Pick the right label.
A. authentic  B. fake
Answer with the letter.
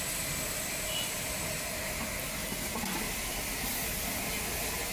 A